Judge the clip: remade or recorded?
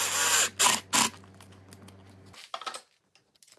recorded